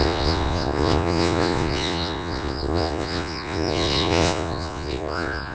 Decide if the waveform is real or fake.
fake